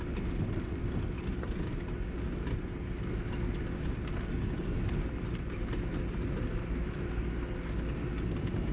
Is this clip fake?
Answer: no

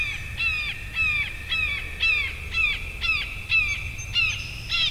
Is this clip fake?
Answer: no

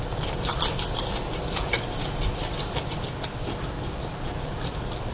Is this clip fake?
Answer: no